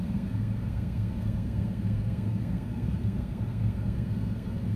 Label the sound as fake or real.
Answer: fake